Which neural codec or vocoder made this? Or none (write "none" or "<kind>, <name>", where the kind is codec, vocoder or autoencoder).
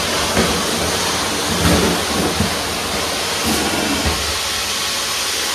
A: none